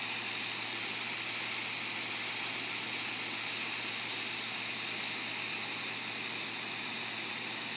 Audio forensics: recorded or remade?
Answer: recorded